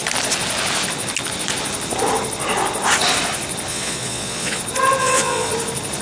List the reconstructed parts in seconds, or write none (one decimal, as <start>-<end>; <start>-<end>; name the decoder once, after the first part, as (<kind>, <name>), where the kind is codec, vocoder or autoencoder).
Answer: 3.7-4.6 (vocoder, Vocos); 5.0-5.5